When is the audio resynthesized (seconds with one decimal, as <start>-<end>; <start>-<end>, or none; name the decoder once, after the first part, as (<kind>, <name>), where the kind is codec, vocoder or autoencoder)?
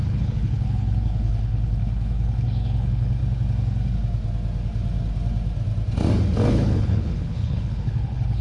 0.0-3.2 (codec, HILCodec); 6.5-8.4